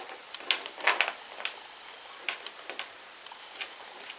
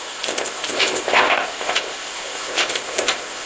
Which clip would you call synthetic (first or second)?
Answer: second